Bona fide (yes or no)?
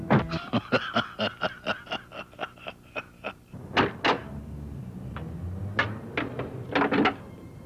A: yes